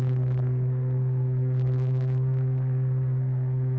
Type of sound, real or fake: fake